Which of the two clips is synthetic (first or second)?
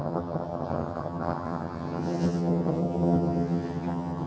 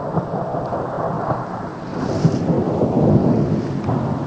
first